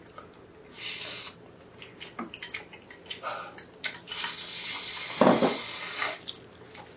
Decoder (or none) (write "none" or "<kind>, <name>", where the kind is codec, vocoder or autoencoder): none